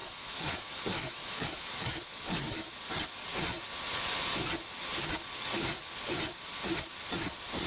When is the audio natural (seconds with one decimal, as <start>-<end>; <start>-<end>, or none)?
2.7-7.7